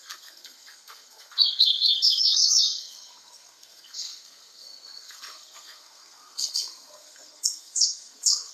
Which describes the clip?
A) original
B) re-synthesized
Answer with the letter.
B